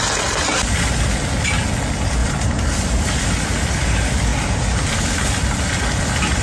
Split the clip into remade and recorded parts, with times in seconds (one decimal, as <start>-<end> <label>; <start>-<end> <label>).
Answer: 0.0-2.2 recorded; 2.2-2.8 remade; 2.8-4.3 recorded; 4.3-5.3 remade; 5.3-6.4 recorded